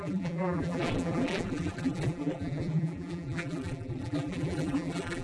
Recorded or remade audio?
remade